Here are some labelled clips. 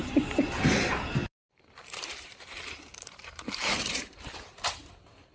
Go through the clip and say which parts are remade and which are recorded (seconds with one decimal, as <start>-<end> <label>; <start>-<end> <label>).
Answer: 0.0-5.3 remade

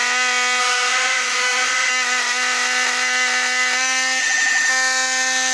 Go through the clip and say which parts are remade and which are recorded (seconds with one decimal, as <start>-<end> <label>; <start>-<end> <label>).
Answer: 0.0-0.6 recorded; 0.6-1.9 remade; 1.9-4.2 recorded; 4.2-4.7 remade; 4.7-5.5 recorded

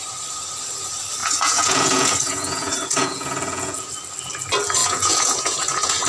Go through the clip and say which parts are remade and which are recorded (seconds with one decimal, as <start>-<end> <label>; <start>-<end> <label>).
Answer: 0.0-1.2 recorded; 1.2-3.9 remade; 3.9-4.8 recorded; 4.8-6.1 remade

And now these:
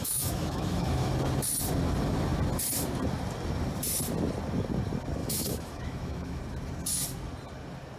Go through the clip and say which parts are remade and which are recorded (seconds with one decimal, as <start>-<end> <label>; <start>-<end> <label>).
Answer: 0.0-1.1 remade; 1.1-5.2 recorded; 5.2-6.4 remade; 6.4-8.0 recorded